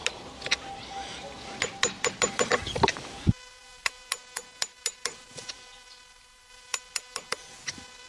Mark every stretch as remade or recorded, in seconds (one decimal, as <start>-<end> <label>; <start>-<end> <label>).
0.0-2.1 recorded; 2.1-4.2 remade; 4.2-4.9 recorded; 4.9-8.1 remade